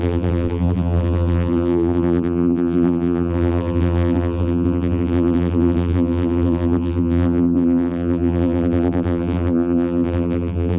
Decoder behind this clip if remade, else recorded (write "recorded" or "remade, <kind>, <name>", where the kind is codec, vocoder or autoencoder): remade, vocoder, BigVGAN v2